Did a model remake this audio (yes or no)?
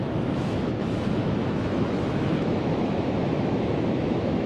yes